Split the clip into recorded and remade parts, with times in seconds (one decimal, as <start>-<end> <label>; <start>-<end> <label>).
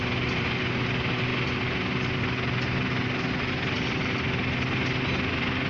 0.0-5.7 recorded